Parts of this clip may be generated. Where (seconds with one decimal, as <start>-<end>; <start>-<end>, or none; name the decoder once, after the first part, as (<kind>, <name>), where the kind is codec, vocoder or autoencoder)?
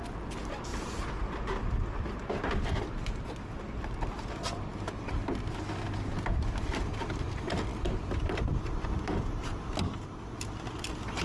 0.7-1.3 (vocoder, BigVGAN v2); 7.7-8.4